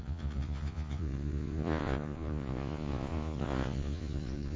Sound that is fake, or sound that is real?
fake